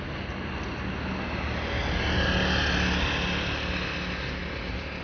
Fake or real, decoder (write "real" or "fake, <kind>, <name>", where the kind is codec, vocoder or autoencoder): real